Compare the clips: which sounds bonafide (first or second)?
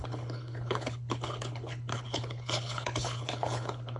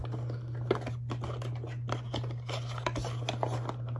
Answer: second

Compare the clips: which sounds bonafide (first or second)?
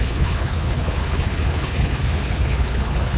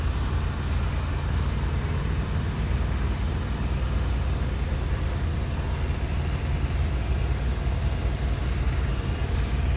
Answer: second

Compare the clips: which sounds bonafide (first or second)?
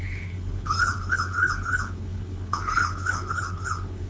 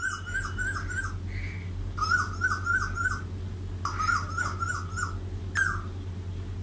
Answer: second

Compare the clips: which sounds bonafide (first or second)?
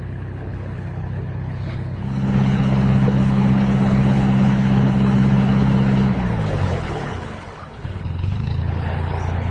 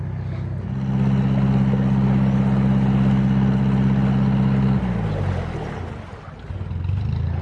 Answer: second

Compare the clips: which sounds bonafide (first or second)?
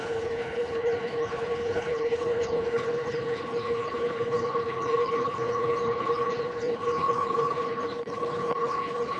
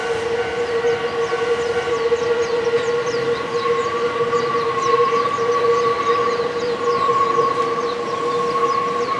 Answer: second